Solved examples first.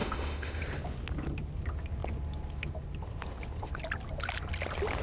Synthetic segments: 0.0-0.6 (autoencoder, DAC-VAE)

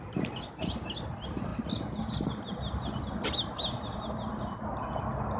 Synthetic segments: none

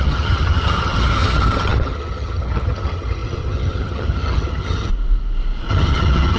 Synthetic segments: 0.0-4.9 (vocoder, HiFi-GAN); 5.7-6.4